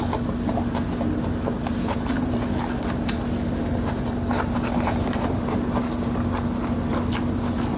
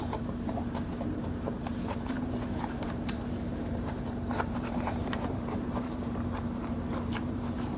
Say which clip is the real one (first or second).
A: first